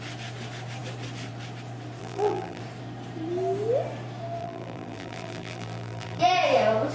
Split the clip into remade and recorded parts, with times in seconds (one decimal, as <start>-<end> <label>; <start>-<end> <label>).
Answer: 0.0-2.0 recorded; 2.0-2.6 remade; 2.6-4.4 recorded; 4.4-6.2 remade; 6.2-6.9 recorded